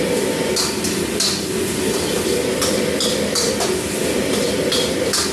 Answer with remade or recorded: recorded